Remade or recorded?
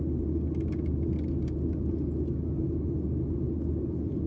recorded